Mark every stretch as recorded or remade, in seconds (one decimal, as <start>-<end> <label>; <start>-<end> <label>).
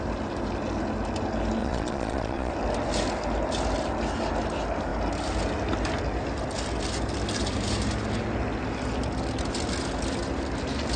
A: 0.0-1.6 recorded; 1.6-2.5 remade; 2.5-11.0 recorded